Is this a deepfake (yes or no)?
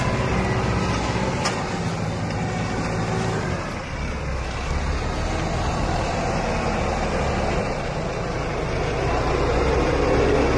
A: no